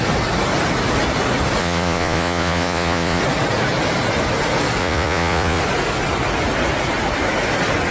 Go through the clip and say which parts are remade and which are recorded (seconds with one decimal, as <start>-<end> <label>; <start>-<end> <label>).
0.0-1.6 recorded; 1.6-3.2 remade; 3.2-4.8 recorded; 4.8-5.6 remade; 5.6-7.9 recorded